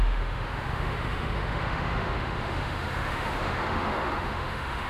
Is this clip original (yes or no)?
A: no